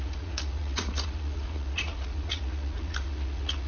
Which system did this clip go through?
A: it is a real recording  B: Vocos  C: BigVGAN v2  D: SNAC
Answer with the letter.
B